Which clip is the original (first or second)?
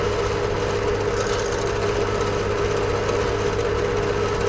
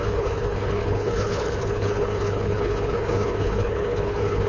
first